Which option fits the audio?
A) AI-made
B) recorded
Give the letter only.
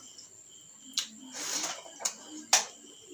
B